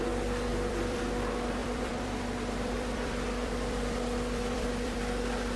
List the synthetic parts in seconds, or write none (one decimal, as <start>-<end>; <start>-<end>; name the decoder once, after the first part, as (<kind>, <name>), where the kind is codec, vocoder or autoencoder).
0.5-1.0 (vocoder, BigVGAN v2); 1.6-5.0

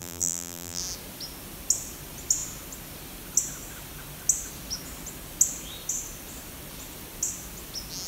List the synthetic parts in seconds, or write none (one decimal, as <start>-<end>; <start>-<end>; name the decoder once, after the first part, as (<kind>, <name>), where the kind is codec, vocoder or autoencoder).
0.0-0.8 (vocoder, BigVGAN v2)